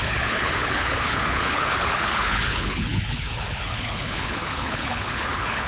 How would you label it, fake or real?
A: fake